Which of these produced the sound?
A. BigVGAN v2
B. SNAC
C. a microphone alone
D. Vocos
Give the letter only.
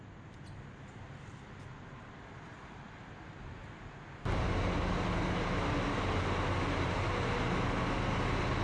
C